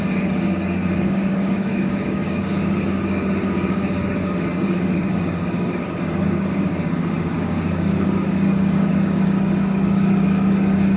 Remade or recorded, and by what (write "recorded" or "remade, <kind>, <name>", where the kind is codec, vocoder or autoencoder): remade, codec, DAC